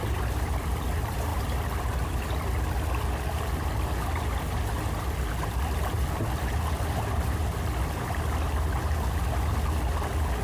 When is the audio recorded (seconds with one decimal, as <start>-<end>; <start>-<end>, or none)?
0.0-10.4